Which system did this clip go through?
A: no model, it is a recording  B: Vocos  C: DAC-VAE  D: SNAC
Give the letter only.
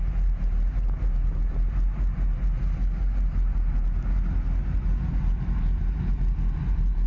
A